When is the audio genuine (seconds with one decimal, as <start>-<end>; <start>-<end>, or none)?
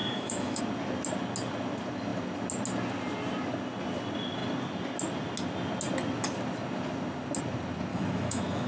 0.6-7.9